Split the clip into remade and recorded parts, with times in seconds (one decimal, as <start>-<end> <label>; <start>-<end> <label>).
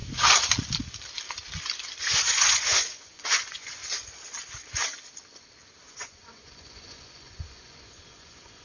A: 0.0-2.0 recorded; 2.0-3.8 remade; 3.8-5.9 recorded; 5.9-8.6 remade